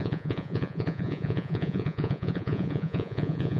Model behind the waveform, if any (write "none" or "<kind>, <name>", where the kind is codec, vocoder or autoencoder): vocoder, Vocos